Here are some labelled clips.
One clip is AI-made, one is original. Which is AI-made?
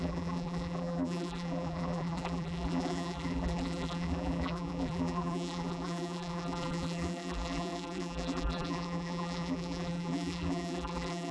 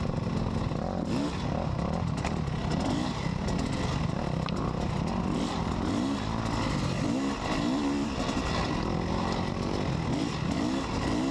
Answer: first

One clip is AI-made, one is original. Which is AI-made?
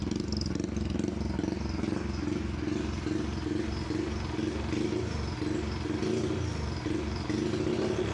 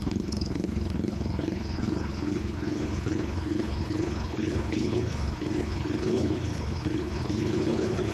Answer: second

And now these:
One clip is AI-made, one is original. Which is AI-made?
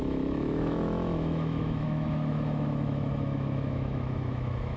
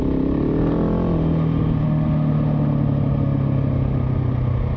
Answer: first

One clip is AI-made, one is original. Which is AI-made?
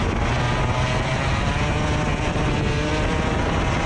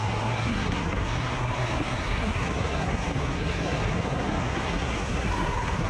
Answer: second